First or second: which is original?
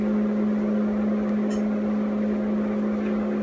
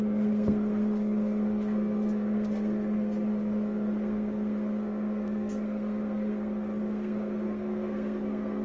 first